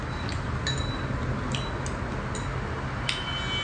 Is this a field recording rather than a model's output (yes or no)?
yes